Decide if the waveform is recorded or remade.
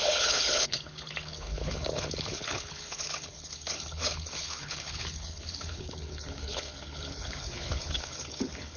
remade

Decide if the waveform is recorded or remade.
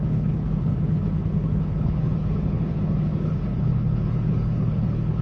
remade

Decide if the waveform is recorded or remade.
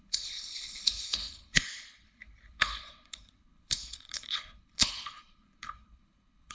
remade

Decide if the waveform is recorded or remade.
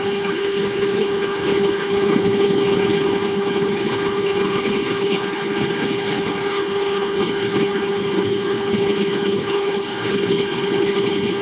remade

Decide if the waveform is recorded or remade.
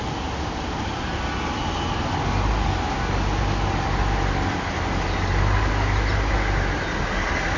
recorded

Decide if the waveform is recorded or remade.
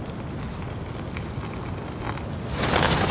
recorded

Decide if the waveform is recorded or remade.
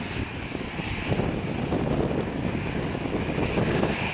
recorded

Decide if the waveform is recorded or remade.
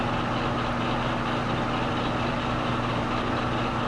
recorded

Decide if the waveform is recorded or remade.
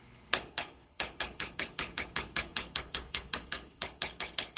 remade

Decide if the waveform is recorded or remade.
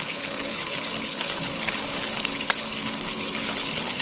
remade